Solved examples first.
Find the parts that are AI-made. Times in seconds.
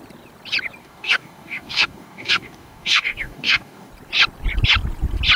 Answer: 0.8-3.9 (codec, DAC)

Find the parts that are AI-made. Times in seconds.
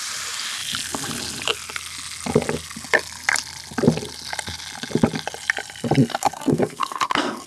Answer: 6.1-7.5 (codec, SNAC)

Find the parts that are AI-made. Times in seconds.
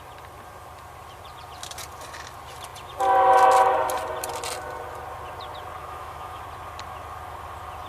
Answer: 5.8-6.4 (autoencoder, DAC-VAE)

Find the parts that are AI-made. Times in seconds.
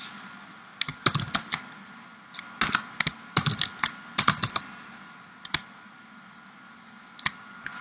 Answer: 4.4-5.0 (vocoder, BigVGAN v2)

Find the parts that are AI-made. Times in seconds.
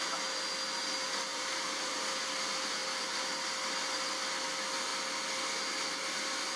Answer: 1.3-2.2 (vocoder, BigVGAN v2)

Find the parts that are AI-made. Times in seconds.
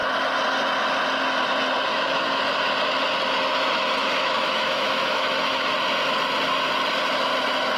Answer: 1.9-2.7 (autoencoder, DAC-VAE); 4.0-5.7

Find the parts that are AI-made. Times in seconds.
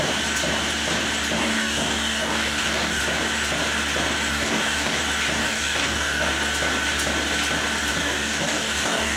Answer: 1.4-3.0 (codec, DAC); 4.3-5.0; 5.4-6.3; 7.9-9.2